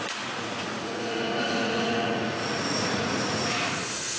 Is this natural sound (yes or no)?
no